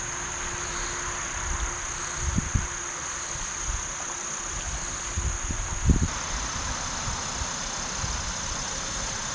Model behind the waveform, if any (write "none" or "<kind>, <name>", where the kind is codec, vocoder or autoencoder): none